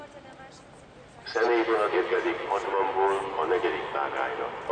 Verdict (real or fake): real